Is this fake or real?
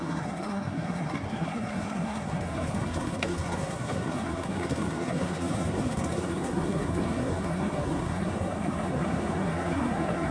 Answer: fake